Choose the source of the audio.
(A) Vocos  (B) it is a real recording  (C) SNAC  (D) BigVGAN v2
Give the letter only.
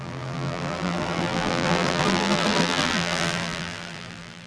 D